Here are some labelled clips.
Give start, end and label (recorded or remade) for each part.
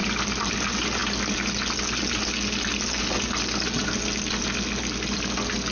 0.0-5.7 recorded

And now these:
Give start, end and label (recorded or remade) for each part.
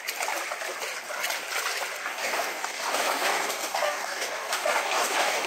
0.0-2.0 recorded; 2.0-5.5 remade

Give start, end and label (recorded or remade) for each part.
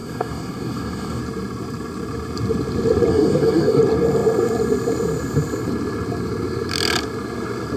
0.0-1.2 remade; 1.2-3.1 recorded; 3.1-3.8 remade; 3.8-7.8 recorded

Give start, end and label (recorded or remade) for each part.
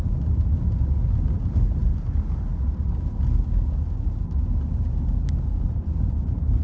0.0-6.6 recorded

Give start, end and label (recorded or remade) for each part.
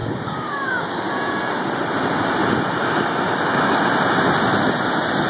0.0-1.0 remade; 1.0-5.3 recorded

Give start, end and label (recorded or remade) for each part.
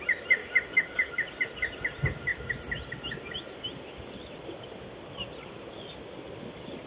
0.0-0.4 recorded; 0.4-1.1 remade; 1.1-6.9 recorded